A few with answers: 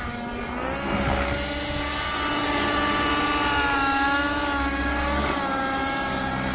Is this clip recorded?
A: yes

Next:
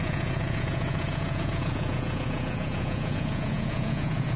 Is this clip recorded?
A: no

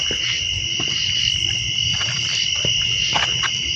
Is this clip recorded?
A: yes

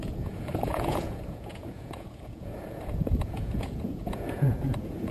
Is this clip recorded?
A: no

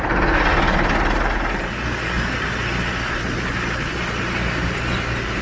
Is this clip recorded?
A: yes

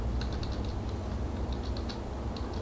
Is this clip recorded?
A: yes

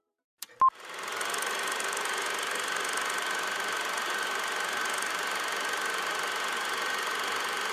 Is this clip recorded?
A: yes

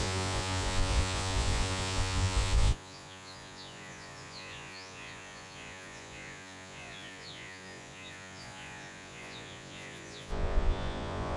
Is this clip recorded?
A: no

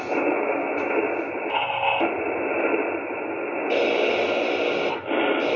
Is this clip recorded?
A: yes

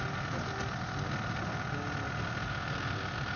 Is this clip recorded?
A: yes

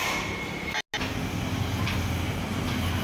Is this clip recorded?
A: yes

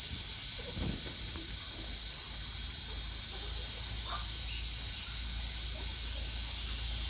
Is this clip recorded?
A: yes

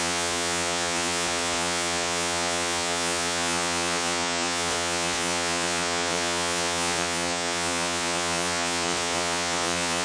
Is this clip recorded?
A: no